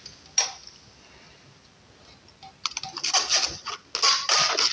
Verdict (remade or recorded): recorded